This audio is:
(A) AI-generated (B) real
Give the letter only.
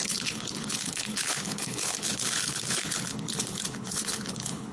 A